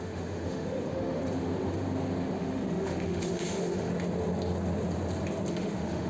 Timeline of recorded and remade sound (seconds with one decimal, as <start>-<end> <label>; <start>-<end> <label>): 0.0-1.2 remade; 1.2-2.4 recorded; 2.4-3.9 remade; 3.9-5.5 recorded; 5.5-6.1 remade